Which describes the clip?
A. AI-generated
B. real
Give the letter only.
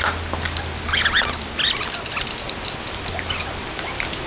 B